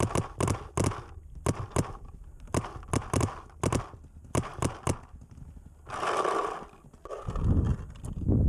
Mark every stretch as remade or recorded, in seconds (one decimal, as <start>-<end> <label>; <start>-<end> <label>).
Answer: 0.0-8.5 recorded